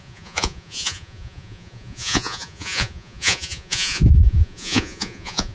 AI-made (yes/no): yes